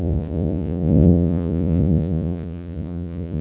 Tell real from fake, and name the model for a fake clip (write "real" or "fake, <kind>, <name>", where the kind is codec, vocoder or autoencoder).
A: fake, vocoder, Vocos